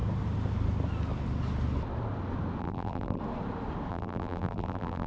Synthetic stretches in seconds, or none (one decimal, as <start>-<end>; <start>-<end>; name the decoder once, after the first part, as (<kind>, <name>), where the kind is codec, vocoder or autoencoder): 2.6-3.2 (vocoder, BigVGAN v2); 3.9-5.1

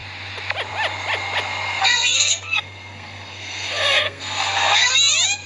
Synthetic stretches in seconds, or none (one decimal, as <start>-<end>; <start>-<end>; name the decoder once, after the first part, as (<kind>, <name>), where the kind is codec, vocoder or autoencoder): 1.8-4.9 (codec, SNAC)

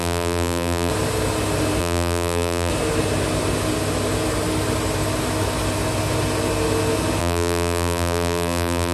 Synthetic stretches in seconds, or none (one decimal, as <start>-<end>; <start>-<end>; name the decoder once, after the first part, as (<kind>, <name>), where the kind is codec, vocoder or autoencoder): 0.0-0.9 (vocoder, BigVGAN v2); 1.8-2.7; 7.2-8.9